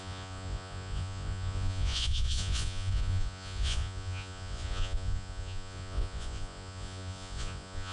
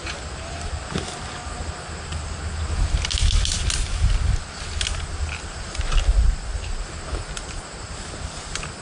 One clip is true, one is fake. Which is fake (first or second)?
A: first